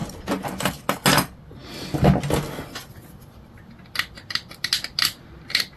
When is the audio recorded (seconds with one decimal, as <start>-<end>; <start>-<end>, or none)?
0.0-5.8